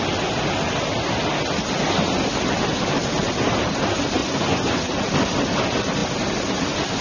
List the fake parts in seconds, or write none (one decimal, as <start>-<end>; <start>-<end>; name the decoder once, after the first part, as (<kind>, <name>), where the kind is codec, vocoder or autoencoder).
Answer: 4.2-4.8 (vocoder, Vocos)